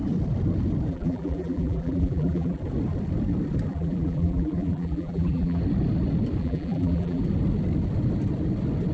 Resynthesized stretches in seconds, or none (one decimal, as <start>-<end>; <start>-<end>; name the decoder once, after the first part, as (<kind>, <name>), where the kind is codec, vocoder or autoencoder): 0.9-2.6 (vocoder, BigVGAN v2); 3.7-5.6; 6.4-7.2